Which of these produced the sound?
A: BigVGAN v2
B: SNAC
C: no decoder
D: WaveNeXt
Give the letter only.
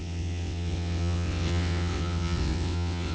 D